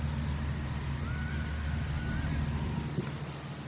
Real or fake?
real